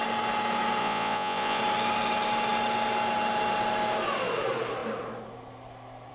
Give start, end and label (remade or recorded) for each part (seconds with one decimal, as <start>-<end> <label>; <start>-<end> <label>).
0.0-0.8 recorded; 0.8-1.6 remade; 1.6-6.1 recorded